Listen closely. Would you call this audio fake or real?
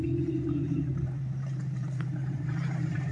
fake